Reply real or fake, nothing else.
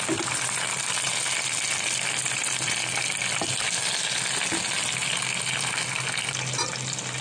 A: real